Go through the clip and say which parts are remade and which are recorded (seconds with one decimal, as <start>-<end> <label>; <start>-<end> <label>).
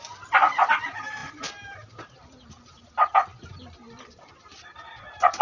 0.0-5.4 recorded